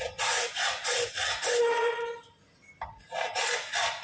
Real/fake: real